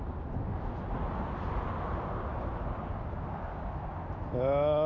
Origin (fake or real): real